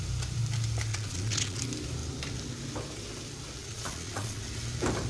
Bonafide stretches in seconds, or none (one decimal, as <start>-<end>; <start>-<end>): 0.0-0.9; 1.6-3.6; 4.4-5.1